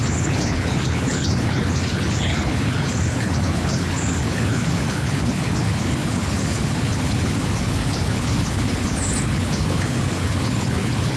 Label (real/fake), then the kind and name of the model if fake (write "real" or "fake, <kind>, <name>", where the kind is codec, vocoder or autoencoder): fake, codec, HILCodec